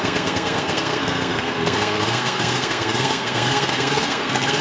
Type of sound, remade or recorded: remade